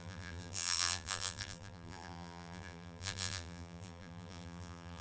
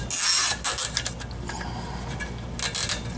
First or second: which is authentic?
second